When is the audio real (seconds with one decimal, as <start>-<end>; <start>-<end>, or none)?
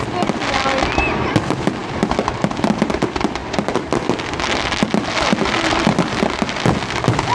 0.0-7.3